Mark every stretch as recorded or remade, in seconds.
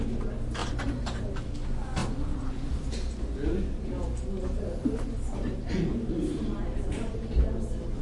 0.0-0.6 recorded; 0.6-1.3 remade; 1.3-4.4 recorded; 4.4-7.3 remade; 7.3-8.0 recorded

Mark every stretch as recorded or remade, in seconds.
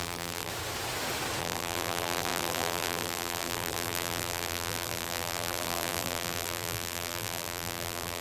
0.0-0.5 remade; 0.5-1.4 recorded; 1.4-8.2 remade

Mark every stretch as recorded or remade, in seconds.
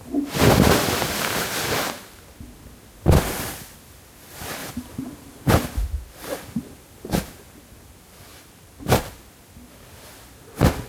0.0-4.6 recorded; 4.6-5.5 remade; 5.5-8.3 recorded; 8.3-9.2 remade; 9.2-10.9 recorded